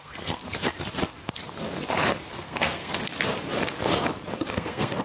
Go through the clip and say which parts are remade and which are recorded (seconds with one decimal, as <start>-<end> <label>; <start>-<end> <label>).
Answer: 0.0-0.4 remade; 0.4-2.3 recorded; 2.3-2.9 remade; 2.9-4.5 recorded; 4.5-5.0 remade